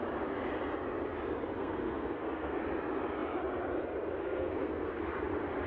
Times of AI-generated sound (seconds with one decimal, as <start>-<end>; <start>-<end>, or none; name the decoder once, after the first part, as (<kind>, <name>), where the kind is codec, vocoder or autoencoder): 1.6-2.6 (codec, SNAC); 4.2-5.0